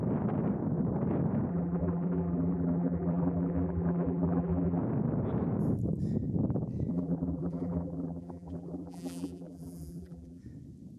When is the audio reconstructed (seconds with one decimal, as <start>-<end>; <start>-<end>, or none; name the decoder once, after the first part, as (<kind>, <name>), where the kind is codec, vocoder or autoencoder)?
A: 1.5-4.8 (vocoder, BigVGAN v2); 6.9-10.4